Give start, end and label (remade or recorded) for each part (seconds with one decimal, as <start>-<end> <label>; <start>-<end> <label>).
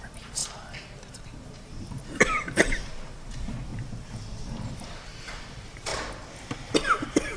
0.0-3.7 remade; 3.7-4.4 recorded; 4.4-5.9 remade; 5.9-6.7 recorded; 6.7-7.4 remade